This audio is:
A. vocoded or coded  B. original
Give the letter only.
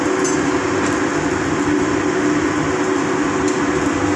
B